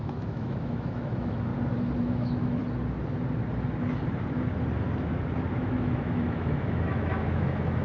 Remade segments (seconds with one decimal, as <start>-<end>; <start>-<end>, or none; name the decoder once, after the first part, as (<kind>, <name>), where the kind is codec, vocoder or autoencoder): 0.0-1.5 (autoencoder, DAC-VAE); 2.0-2.6; 5.5-7.8